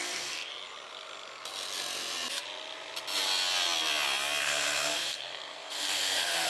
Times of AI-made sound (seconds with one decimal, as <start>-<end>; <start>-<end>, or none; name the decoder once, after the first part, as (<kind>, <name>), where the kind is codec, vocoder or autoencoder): 0.0-0.5 (codec, SNAC); 4.4-6.5